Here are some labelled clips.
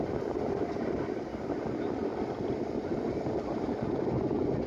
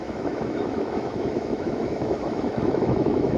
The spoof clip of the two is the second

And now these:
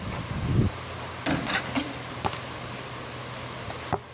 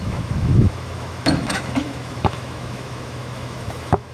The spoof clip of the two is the second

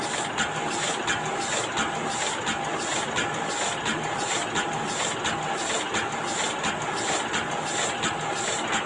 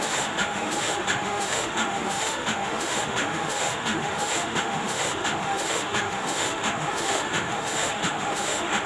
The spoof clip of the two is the second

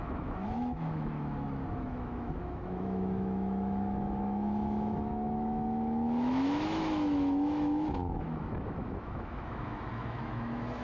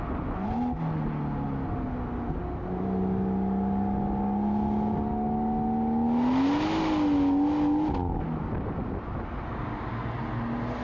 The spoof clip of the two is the first